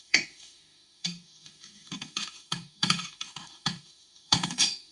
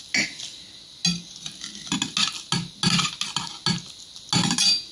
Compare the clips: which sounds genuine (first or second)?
second